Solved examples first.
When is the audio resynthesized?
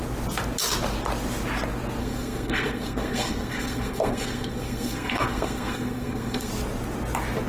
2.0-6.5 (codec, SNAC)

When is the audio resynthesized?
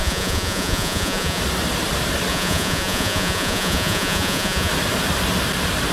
0.0-1.4 (vocoder, Vocos); 2.3-4.7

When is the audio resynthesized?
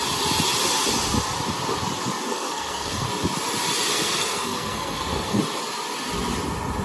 2.3-3.1 (codec, SNAC); 3.9-5.4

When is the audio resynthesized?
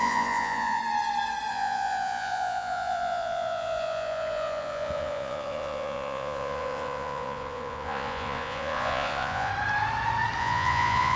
0.0-0.8 (vocoder, Vocos); 1.5-9.5; 10.4-11.2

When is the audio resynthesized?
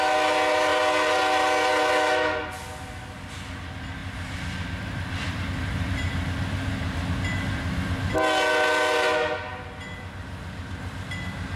4.0-5.9 (vocoder, BigVGAN v2)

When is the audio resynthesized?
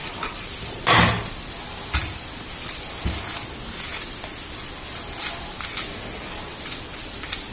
none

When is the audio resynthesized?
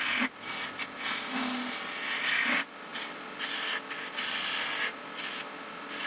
none